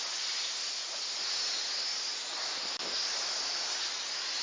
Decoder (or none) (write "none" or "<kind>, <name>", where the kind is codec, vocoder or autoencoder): none